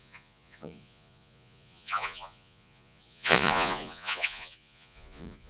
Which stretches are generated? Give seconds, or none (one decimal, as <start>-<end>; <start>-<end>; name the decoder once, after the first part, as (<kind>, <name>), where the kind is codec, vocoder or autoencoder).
0.0-5.5 (vocoder, Vocos)